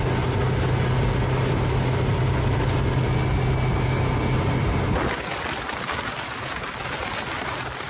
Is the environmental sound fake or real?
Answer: real